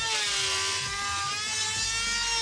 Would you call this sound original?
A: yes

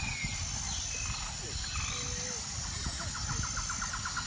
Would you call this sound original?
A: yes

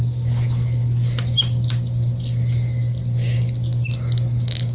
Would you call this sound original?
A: yes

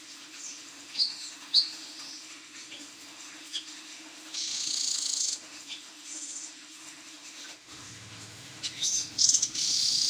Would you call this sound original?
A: no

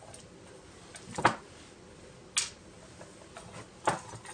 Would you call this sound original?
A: yes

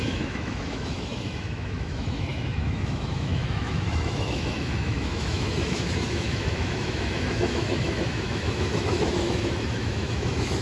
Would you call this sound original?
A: no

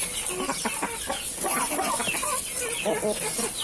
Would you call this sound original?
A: yes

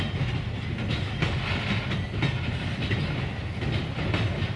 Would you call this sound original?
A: yes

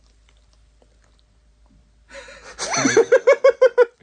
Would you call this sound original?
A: yes